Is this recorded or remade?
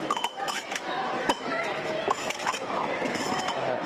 remade